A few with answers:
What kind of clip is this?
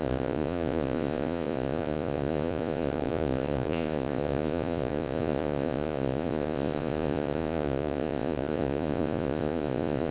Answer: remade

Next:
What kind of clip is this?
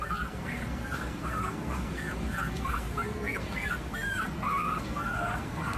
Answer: remade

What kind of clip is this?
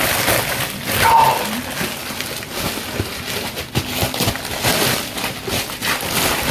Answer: recorded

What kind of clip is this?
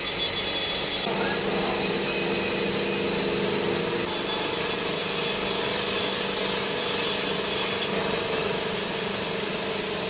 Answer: recorded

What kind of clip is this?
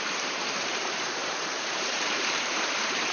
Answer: remade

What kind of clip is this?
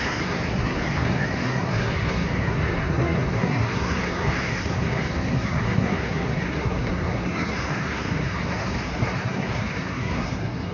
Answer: remade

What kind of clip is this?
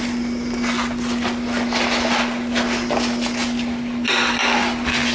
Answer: recorded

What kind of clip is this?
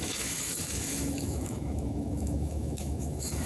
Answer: remade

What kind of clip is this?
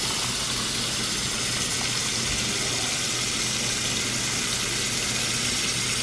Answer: recorded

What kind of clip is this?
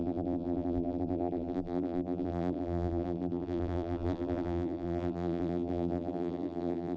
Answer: remade